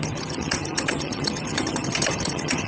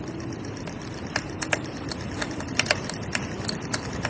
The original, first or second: second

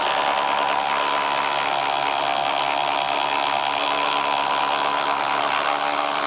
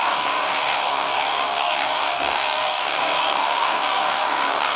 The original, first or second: first